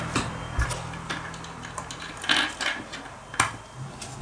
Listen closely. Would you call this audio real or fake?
real